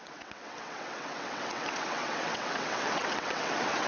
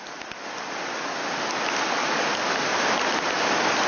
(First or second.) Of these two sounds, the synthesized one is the first